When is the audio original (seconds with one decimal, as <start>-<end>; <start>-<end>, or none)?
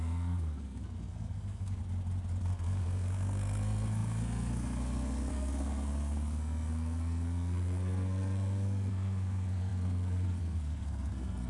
1.8-2.4